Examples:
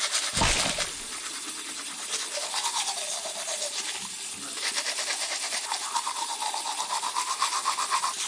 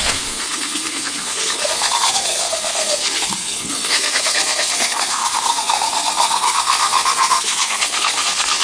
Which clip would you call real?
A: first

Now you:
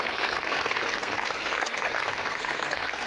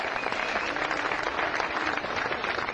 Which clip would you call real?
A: second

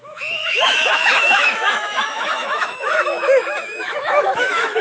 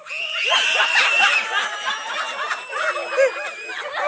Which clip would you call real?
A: second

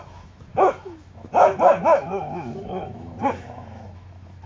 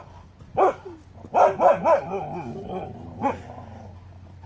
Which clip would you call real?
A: second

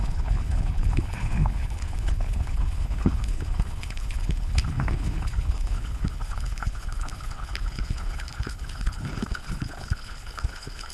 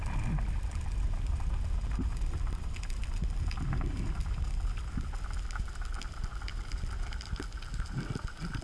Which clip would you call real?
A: second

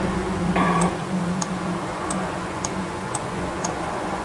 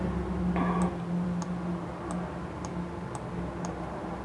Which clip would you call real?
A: second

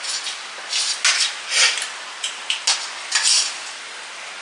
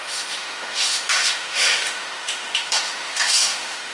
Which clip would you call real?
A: first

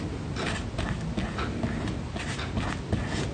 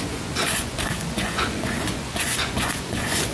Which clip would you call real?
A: first